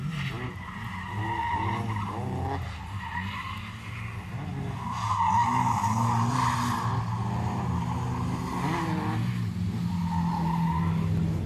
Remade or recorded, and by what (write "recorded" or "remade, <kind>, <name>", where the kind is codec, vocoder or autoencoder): recorded